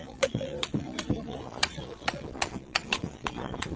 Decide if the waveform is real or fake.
fake